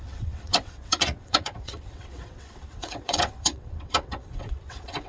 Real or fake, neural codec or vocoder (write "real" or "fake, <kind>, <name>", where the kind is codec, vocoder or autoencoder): fake, vocoder, WaveNeXt